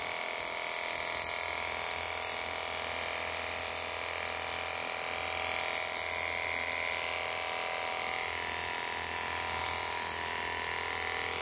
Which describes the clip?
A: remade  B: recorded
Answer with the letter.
B